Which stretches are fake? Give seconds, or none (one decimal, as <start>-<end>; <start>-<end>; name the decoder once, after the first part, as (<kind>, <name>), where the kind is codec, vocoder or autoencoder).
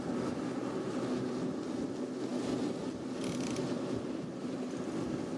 none